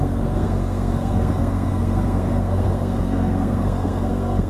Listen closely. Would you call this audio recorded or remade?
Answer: remade